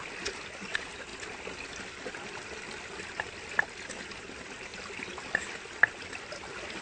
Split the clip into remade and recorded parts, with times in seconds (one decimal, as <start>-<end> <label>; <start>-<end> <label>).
0.0-6.8 recorded